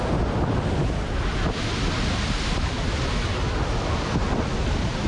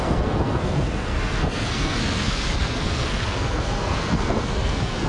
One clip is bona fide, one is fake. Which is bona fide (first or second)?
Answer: first